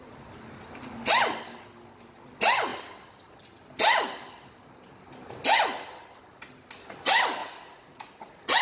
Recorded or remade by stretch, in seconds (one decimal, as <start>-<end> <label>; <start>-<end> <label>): 0.0-7.4 recorded; 7.4-8.6 remade